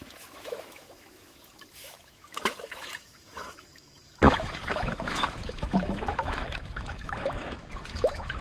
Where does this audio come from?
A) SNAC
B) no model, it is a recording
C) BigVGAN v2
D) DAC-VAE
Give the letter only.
D